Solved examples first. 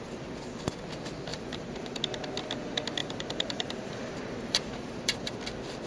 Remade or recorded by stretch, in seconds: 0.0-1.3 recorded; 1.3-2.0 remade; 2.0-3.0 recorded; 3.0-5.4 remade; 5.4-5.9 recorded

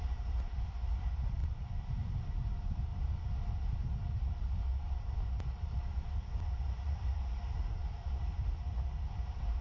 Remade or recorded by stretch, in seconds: 0.0-1.4 remade; 1.4-2.2 recorded; 2.2-2.9 remade; 2.9-3.8 recorded; 3.8-9.6 remade

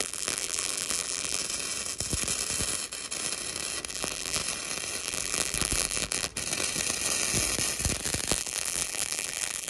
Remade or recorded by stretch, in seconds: 0.0-1.4 remade; 1.4-3.9 recorded; 3.9-4.4 remade; 4.4-5.0 recorded; 5.0-6.3 remade; 6.3-8.3 recorded; 8.3-9.7 remade